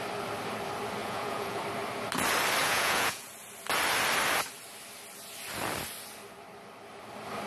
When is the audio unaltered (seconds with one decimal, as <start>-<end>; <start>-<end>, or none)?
0.0-1.0; 1.6-2.6; 3.3-7.5